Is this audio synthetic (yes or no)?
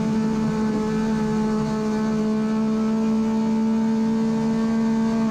no